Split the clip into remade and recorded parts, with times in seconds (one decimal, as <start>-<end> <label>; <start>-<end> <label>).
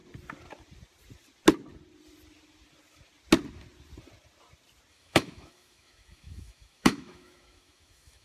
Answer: 0.0-4.9 recorded; 4.9-8.2 remade